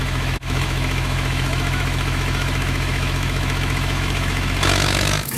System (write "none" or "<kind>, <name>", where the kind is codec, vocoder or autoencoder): autoencoder, DAC-VAE